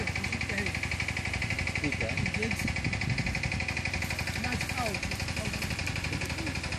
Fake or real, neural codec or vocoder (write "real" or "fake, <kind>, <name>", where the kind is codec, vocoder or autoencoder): real